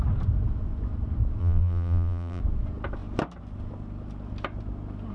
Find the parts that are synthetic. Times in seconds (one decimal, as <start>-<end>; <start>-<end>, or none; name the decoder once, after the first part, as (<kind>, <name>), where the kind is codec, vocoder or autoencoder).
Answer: 1.4-2.4 (vocoder, BigVGAN v2)

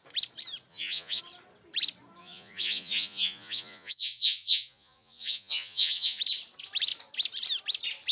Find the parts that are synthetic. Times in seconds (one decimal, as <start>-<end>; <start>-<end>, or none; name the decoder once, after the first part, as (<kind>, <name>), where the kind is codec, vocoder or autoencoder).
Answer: 0.7-1.2 (vocoder, Vocos); 2.2-6.2